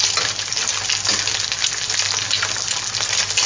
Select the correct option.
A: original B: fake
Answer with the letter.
A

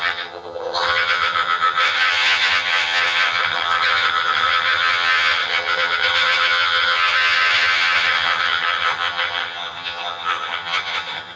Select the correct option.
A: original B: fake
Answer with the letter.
B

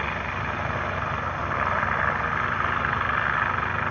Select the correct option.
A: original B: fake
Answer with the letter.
A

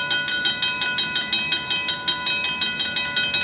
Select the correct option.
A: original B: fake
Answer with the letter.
A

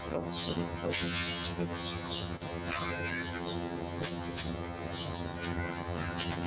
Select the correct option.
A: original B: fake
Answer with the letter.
B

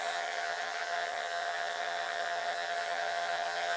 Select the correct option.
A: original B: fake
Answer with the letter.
B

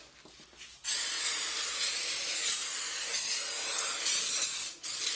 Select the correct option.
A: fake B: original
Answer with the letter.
B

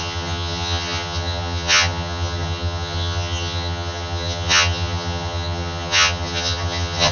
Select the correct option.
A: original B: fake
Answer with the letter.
B